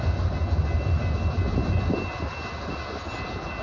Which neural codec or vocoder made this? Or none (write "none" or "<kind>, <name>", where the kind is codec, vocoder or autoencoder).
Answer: none